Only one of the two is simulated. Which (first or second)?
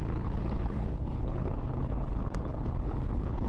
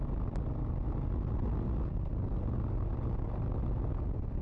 first